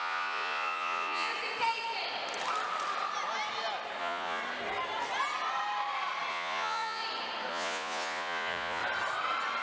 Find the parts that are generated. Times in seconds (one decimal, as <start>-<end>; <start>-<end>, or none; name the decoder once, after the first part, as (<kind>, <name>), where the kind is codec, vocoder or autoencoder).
0.0-1.3 (vocoder, Vocos); 4.0-4.4; 6.3-7.0; 7.5-8.8